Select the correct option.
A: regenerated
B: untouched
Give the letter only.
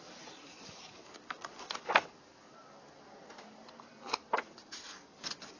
B